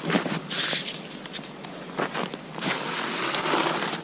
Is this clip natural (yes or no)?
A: yes